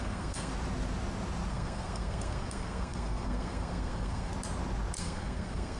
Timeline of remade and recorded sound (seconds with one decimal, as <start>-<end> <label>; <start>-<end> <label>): 0.0-0.5 remade; 0.5-1.5 recorded; 1.5-4.3 remade; 4.3-5.0 recorded; 5.0-5.8 remade